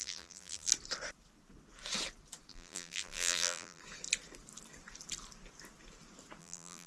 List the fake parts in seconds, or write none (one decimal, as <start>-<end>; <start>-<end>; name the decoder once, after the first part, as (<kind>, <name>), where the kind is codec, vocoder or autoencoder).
0.0-0.7 (vocoder, BigVGAN v2); 2.5-3.8; 6.4-6.9